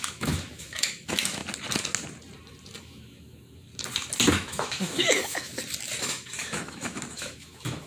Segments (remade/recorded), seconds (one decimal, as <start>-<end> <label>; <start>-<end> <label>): 0.0-1.4 remade; 1.4-2.8 recorded; 2.8-3.7 remade; 3.7-4.3 recorded; 4.3-5.5 remade; 5.5-6.0 recorded; 6.0-7.9 remade